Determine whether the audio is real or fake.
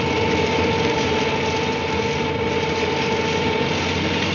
real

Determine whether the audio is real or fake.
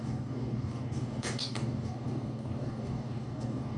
fake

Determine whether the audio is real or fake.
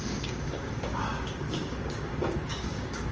fake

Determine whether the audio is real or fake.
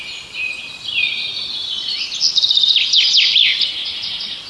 real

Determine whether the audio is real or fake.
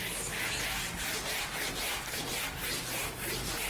real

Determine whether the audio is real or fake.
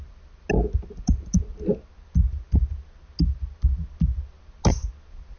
real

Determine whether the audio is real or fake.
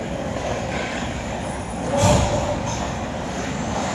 fake